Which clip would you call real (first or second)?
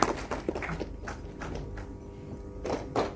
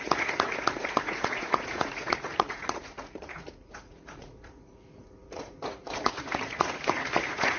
first